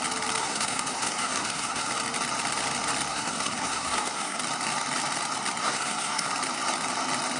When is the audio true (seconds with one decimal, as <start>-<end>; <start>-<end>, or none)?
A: 0.0-0.4; 1.9-3.1; 4.4-5.6; 6.3-7.4